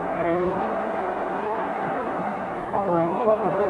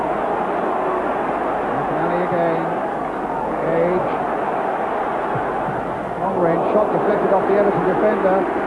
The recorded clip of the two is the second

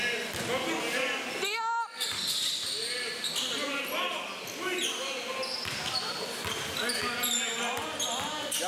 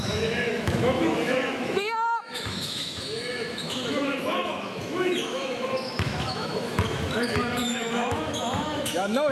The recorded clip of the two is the first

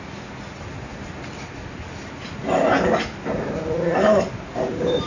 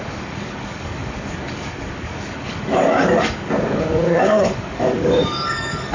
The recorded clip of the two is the first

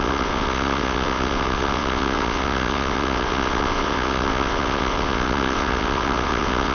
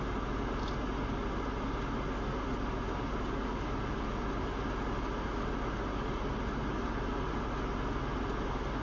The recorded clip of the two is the second